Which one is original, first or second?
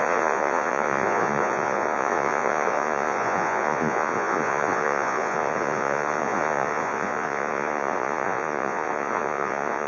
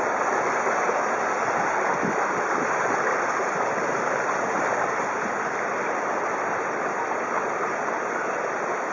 second